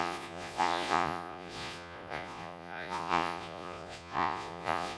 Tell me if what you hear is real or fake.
fake